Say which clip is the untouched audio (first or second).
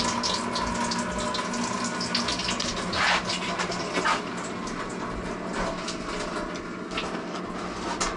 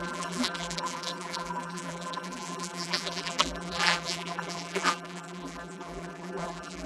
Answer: first